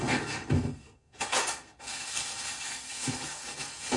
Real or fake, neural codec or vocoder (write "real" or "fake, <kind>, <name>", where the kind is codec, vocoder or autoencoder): fake, codec, SNAC